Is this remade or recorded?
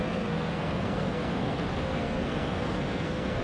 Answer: remade